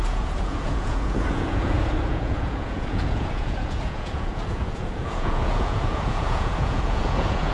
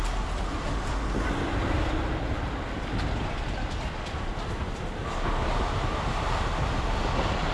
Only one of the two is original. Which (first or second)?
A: second